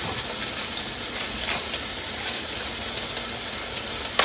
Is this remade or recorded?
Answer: recorded